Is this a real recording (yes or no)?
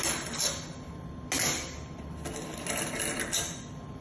yes